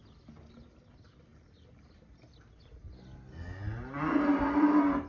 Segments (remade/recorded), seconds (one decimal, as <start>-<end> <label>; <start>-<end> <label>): 0.0-5.1 recorded